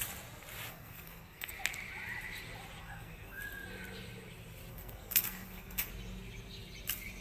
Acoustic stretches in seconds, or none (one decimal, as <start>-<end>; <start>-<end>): 0.0-0.7; 1.5-2.8; 3.4-4.7; 5.9-7.2